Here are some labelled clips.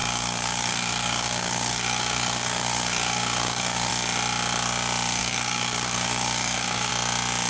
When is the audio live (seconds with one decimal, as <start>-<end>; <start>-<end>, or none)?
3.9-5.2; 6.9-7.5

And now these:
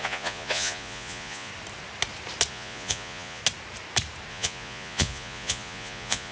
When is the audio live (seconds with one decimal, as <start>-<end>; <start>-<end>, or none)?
1.5-2.5; 3.4-4.3

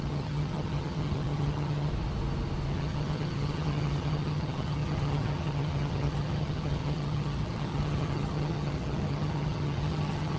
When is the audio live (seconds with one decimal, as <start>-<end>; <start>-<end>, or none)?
1.9-2.7

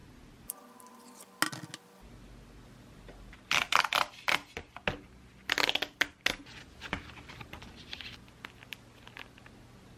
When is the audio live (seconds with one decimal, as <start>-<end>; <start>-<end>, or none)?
0.0-10.0

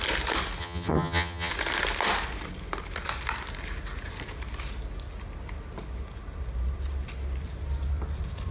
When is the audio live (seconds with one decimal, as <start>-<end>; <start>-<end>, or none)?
0.0-0.6; 1.5-8.5